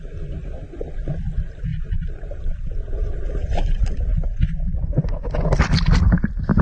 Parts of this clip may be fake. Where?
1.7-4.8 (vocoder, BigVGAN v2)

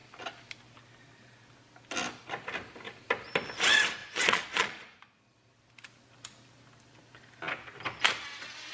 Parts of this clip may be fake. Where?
4.0-5.2 (vocoder, Vocos)

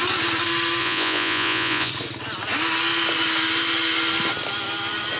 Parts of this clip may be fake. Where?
0.8-1.9 (vocoder, Vocos)

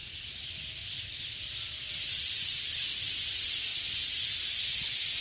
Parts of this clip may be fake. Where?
none

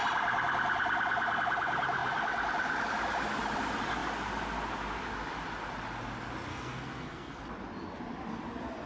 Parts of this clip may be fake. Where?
6.5-7.4 (codec, SNAC)